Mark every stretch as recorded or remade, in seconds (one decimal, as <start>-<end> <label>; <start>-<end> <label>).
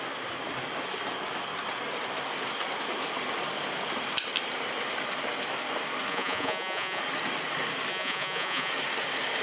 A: 0.0-6.1 recorded; 6.1-7.0 remade; 7.0-7.9 recorded; 7.9-8.7 remade; 8.7-9.4 recorded